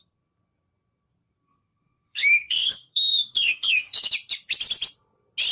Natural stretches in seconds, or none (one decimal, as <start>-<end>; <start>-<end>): 0.0-1.5; 4.1-5.5